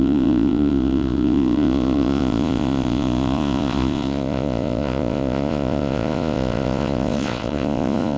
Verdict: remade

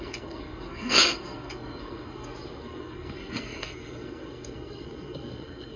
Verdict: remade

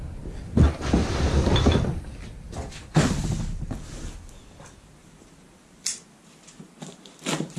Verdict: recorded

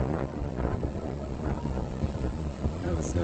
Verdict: remade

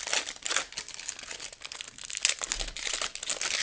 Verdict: recorded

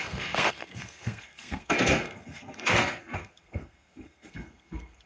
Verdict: remade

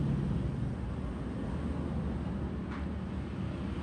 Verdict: recorded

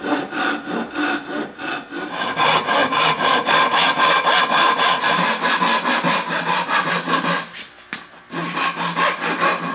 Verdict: recorded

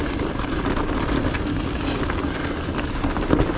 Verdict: recorded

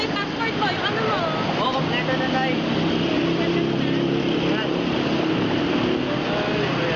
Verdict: recorded